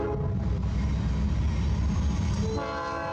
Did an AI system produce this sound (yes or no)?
no